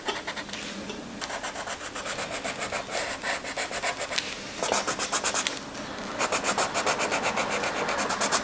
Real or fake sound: real